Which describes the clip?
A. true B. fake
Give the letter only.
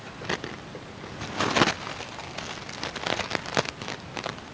A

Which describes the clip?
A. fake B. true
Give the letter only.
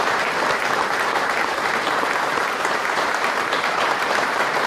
A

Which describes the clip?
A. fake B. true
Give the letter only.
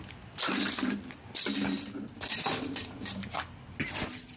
B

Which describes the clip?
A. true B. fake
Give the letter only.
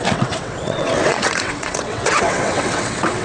B